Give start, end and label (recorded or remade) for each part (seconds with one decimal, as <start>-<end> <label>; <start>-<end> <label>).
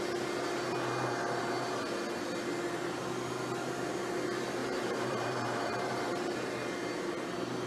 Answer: 0.0-4.6 recorded; 4.6-6.3 remade; 6.3-7.7 recorded